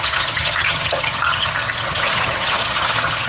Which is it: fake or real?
fake